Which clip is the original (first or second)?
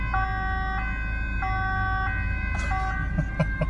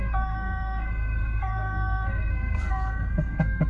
first